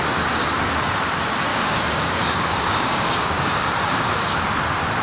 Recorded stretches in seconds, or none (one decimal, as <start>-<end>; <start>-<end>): 0.0-1.5; 4.4-5.0

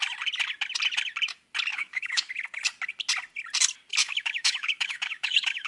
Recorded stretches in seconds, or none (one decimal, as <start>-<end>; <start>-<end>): 0.0-1.7; 2.3-4.0

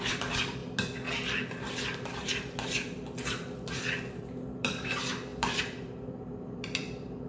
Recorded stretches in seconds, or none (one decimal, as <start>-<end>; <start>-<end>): 0.6-4.2

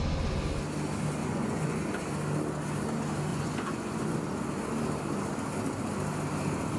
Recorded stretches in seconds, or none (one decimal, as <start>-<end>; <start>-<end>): 0.0-1.2; 1.8-3.3; 4.2-6.8

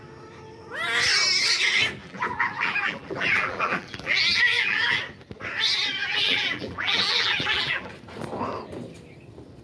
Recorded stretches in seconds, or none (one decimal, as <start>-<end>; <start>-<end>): 0.0-2.0; 5.0-6.0; 7.9-9.6

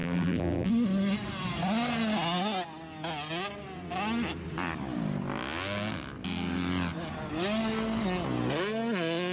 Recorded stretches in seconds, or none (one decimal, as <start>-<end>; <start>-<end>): 0.7-9.3

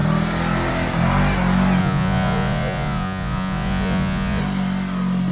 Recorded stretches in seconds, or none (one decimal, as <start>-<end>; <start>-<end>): 0.0-1.8; 4.4-5.3

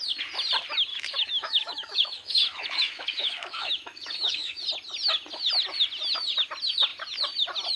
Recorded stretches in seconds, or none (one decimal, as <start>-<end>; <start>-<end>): 0.0-0.9; 4.7-7.8